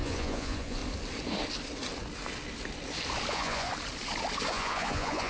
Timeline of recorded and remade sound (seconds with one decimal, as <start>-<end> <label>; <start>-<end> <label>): 0.0-0.8 remade; 0.8-3.3 recorded; 3.3-3.7 remade; 3.7-4.5 recorded; 4.5-5.3 remade